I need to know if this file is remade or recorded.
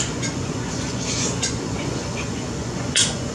remade